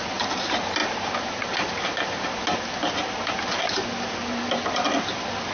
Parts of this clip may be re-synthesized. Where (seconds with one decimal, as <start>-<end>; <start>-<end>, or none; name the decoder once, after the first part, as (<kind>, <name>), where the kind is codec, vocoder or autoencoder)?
none